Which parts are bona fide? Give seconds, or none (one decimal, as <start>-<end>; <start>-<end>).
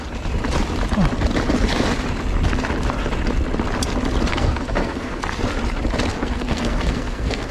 0.0-4.3; 5.2-6.1